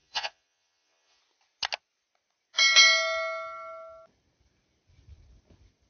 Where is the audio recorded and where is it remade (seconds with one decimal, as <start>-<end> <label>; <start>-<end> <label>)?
0.0-1.2 remade; 1.2-5.9 recorded